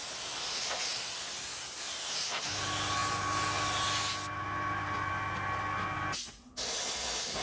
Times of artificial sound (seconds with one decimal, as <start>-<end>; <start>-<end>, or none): none